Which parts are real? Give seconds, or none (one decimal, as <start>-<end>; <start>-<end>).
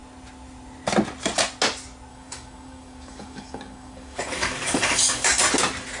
0.0-2.1; 5.4-6.0